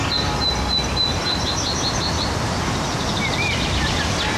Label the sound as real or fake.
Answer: real